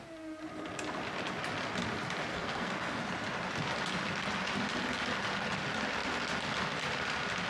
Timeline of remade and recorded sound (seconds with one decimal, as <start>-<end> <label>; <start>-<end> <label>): 0.0-2.3 recorded; 2.3-3.0 remade; 3.0-7.5 recorded